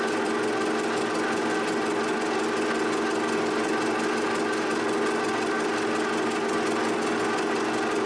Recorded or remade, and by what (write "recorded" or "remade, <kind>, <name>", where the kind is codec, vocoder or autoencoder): recorded